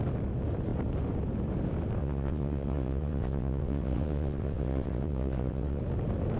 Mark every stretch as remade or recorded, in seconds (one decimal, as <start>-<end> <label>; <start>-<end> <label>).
0.0-2.0 recorded; 2.0-5.8 remade; 5.8-6.4 recorded

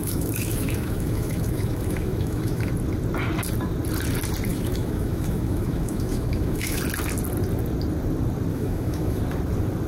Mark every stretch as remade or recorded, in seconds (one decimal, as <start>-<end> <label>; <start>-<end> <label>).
0.0-2.7 remade; 2.7-4.5 recorded; 4.5-6.8 remade; 6.8-8.5 recorded; 8.5-9.2 remade; 9.2-9.9 recorded

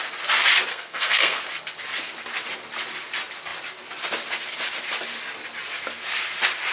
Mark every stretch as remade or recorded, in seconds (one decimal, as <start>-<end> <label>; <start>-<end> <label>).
0.0-0.7 recorded; 0.7-1.4 remade; 1.4-6.7 recorded

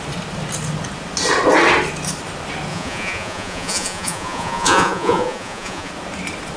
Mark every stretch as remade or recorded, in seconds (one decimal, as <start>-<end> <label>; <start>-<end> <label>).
0.0-2.7 recorded; 2.7-5.9 remade; 5.9-6.6 recorded

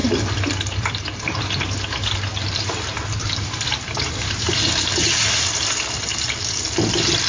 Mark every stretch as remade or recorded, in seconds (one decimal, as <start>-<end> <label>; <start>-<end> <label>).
0.0-7.3 recorded

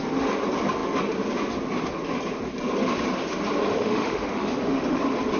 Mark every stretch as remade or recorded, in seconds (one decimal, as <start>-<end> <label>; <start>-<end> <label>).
0.0-3.7 recorded; 3.7-5.0 remade; 5.0-5.4 recorded

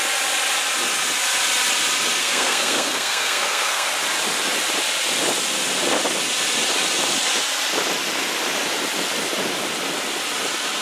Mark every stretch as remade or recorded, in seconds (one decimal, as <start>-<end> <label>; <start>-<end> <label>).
0.0-2.2 recorded; 2.2-3.9 remade; 3.9-10.8 recorded

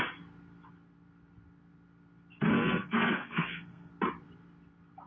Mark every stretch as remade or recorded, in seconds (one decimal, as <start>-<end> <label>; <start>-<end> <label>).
0.0-2.5 recorded; 2.5-3.9 remade; 3.9-5.1 recorded